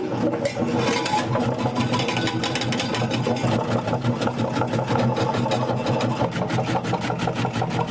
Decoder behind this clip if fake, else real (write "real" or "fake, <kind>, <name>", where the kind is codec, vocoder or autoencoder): real